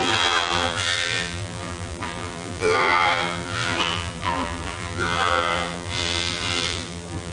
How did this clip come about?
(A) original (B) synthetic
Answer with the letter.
B